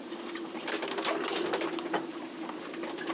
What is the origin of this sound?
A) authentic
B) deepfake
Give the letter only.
A